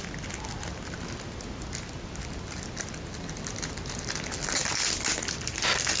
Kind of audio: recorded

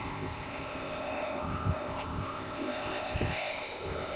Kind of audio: remade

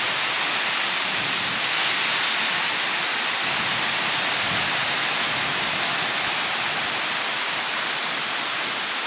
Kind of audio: recorded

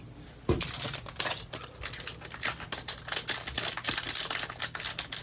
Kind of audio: recorded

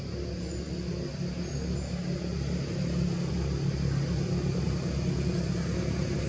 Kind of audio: recorded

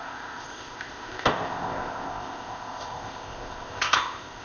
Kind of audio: remade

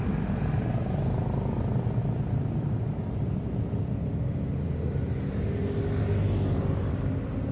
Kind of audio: recorded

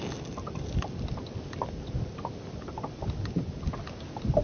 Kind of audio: recorded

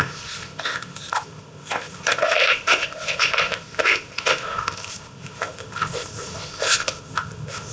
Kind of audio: remade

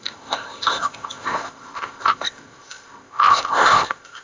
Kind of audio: remade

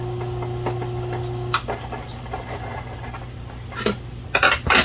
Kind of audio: recorded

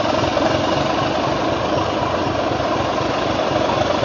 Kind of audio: recorded